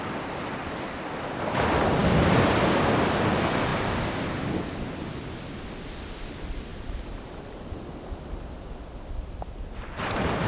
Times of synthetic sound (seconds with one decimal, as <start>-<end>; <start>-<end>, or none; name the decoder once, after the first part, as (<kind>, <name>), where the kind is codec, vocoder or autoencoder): none